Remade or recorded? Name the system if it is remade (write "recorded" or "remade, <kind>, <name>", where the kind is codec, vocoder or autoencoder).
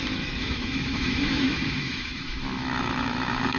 remade, autoencoder, DAC-VAE